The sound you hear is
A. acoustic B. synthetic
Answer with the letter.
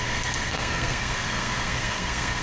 B